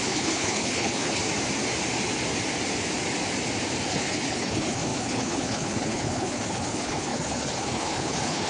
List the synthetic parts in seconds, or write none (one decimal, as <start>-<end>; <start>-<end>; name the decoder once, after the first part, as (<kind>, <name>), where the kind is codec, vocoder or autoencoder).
0.0-1.2 (codec, HILCodec); 3.9-8.5